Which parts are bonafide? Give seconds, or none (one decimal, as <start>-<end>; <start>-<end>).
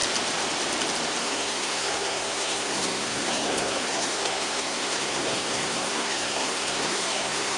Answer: 0.0-1.2